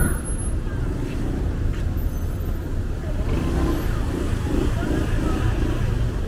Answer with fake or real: real